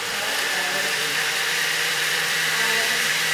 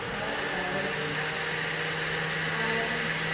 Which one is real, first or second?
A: second